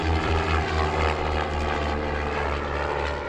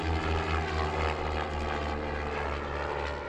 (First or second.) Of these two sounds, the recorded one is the second